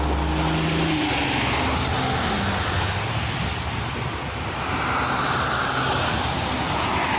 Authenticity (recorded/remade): recorded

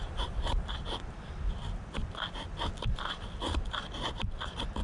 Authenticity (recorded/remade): recorded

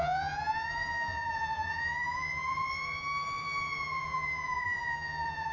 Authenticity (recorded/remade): remade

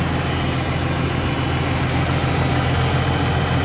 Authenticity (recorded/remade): recorded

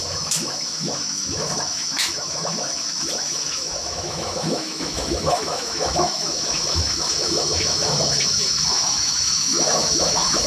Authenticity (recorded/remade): remade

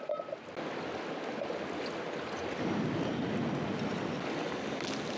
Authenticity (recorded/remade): recorded